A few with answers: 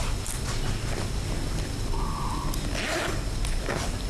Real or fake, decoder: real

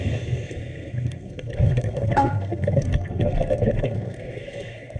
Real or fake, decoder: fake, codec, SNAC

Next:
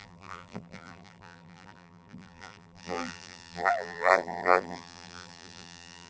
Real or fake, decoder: fake, vocoder, BigVGAN v2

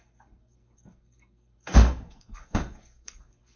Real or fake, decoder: fake, codec, SNAC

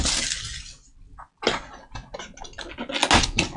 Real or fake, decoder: real